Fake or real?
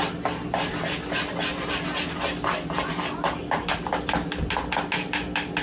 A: real